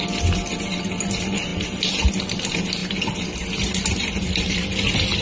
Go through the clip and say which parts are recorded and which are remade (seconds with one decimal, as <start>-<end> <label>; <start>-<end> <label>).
0.0-5.2 recorded